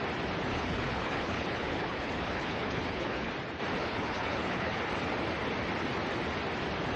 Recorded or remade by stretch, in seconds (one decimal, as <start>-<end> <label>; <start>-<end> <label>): 0.0-0.5 recorded; 0.5-3.3 remade; 3.3-3.8 recorded; 3.8-4.8 remade; 4.8-7.0 recorded